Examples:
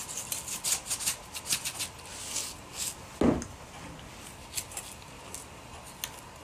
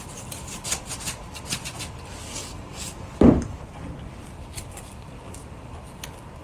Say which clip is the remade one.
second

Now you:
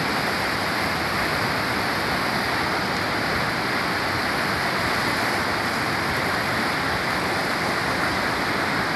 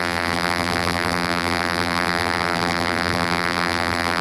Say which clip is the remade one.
second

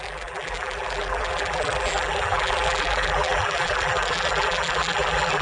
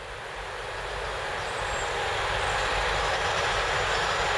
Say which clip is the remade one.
first